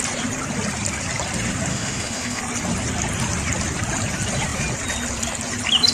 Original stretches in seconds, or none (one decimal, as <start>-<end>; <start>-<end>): 0.0-1.7; 2.4-5.9